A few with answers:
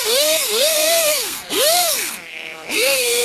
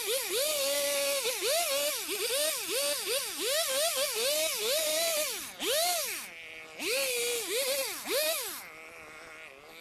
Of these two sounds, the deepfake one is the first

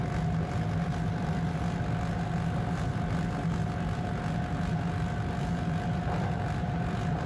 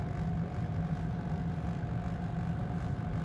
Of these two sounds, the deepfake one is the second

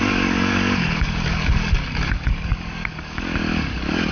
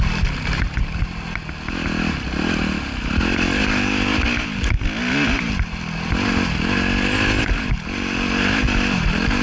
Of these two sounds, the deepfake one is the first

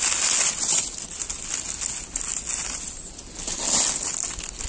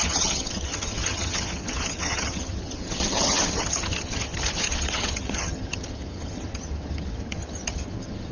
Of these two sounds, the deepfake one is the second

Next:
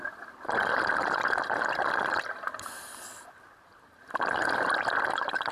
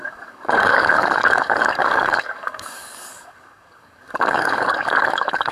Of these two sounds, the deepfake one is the second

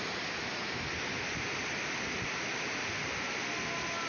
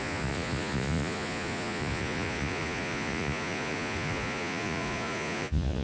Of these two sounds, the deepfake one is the second